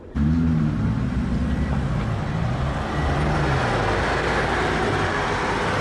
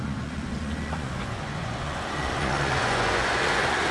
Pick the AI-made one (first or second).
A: second